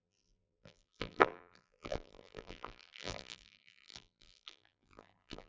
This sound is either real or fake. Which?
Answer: fake